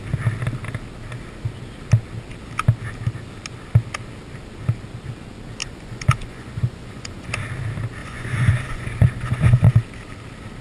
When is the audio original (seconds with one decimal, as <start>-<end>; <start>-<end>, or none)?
0.0-5.6; 7.3-8.0; 9.7-10.6